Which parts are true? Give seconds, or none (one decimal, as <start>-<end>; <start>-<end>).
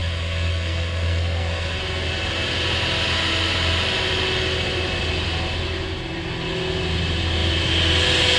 1.8-8.4